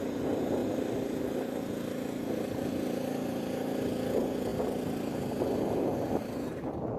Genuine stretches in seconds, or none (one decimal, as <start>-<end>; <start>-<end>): 0.0-7.0